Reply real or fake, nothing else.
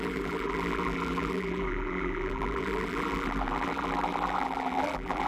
fake